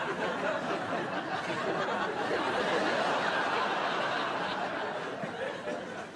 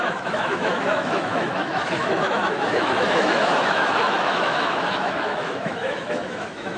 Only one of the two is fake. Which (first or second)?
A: second